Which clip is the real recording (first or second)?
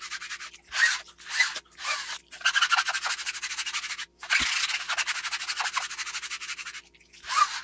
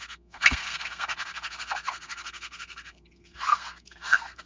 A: first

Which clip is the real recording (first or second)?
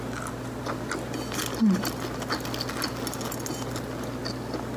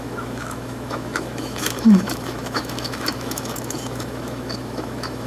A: first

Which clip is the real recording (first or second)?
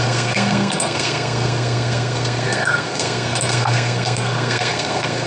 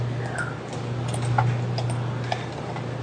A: second